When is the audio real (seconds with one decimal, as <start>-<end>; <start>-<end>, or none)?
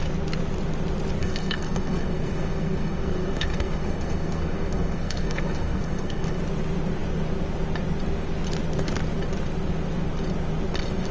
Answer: 0.0-1.2; 6.4-11.1